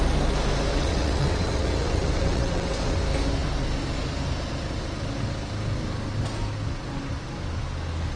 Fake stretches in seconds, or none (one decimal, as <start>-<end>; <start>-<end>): 0.7-3.0